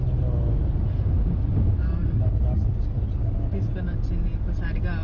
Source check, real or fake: real